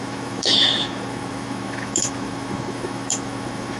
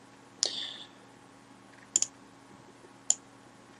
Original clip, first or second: second